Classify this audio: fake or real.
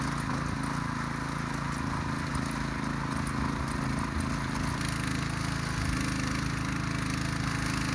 real